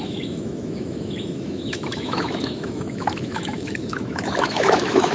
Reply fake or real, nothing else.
fake